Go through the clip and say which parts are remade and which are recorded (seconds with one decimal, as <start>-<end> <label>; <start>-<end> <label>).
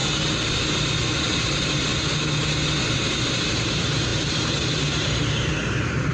0.0-1.1 recorded; 1.1-1.9 remade; 1.9-2.8 recorded; 2.8-6.1 remade